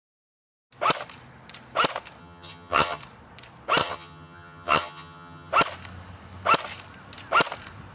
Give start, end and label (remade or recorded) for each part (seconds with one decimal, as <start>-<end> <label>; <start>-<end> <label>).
0.0-2.2 recorded; 2.2-3.0 remade; 3.0-3.8 recorded; 3.8-5.5 remade; 5.5-7.9 recorded